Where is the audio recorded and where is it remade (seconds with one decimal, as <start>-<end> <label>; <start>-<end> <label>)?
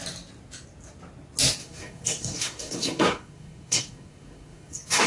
0.0-1.6 recorded; 1.6-5.1 remade